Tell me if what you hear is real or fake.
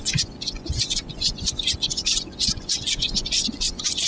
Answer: fake